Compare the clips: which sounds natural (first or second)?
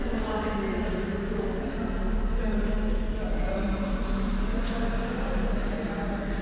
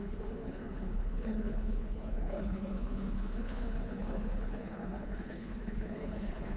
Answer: first